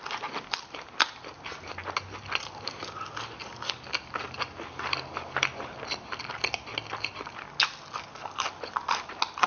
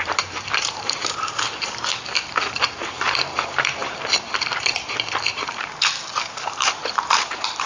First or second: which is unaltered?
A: first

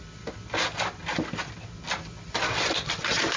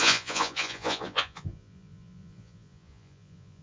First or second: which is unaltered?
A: first